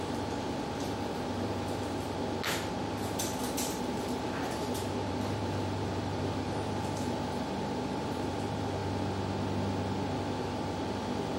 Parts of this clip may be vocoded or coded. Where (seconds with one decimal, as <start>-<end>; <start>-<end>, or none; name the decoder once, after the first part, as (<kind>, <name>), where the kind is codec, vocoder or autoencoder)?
0.0-8.8 (vocoder, BigVGAN v2); 10.4-11.4